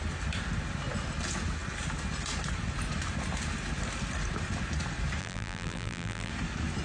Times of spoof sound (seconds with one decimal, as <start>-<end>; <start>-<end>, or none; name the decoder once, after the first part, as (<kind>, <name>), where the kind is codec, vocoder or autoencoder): 5.2-6.3 (vocoder, BigVGAN v2)